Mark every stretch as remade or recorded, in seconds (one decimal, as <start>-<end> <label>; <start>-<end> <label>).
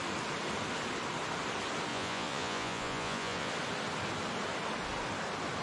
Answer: 0.0-1.9 recorded; 1.9-3.5 remade; 3.5-5.6 recorded